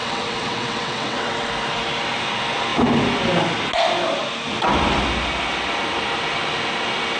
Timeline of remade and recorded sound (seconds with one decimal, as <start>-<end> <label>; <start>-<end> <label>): 0.0-1.5 remade; 1.5-7.2 recorded